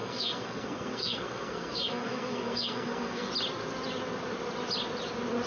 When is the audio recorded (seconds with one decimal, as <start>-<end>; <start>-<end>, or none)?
3.3-5.5

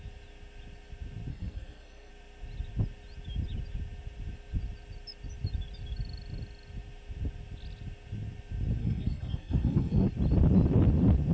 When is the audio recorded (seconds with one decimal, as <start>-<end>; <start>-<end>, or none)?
0.0-1.3; 2.1-8.8; 10.1-11.3